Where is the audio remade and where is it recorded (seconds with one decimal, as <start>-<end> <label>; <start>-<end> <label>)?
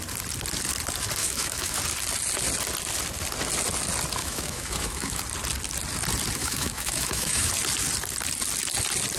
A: 0.0-1.2 recorded; 1.2-1.8 remade; 1.8-4.2 recorded; 4.2-5.2 remade; 5.2-6.4 recorded; 6.4-7.5 remade; 7.5-9.2 recorded